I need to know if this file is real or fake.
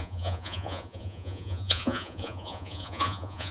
fake